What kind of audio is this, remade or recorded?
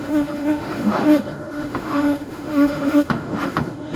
remade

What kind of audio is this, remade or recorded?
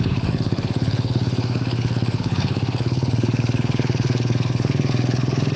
remade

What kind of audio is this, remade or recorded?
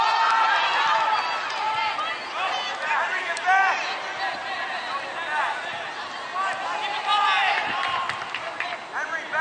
recorded